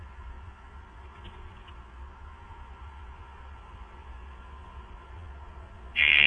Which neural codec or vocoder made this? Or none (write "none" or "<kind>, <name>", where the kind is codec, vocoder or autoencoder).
vocoder, Vocos